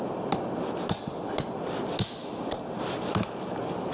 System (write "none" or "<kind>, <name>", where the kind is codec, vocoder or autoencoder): none